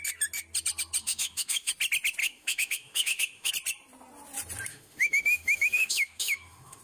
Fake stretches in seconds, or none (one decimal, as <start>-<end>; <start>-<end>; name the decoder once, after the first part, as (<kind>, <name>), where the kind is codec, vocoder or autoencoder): 1.0-1.7 (autoencoder, DAC-VAE); 2.2-3.5; 4.7-6.8